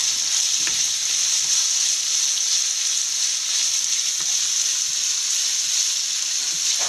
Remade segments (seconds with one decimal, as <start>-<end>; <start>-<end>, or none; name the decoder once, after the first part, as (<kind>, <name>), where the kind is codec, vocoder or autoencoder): none

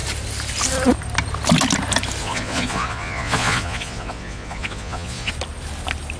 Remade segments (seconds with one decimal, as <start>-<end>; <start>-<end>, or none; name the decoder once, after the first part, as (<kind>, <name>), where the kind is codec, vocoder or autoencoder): 2.2-5.3 (vocoder, Vocos)

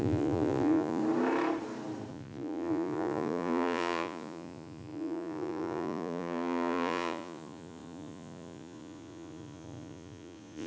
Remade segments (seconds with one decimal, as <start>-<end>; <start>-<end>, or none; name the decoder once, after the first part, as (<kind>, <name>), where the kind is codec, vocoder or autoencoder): 0.0-1.0 (vocoder, Vocos); 2.1-10.7

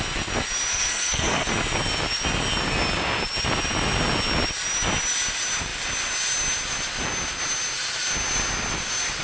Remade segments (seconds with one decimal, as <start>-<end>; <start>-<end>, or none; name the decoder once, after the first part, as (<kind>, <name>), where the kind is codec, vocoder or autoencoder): 0.7-1.5 (codec, SNAC)